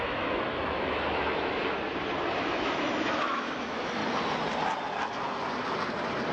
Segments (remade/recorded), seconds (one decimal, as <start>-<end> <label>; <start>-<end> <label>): 0.0-1.6 remade; 1.6-2.3 recorded; 2.3-4.0 remade; 4.0-6.3 recorded